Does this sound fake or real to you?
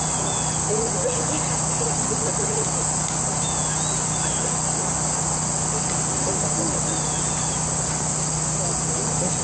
real